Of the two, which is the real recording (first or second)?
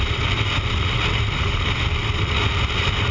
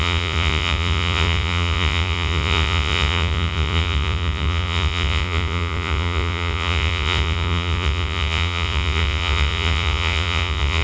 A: first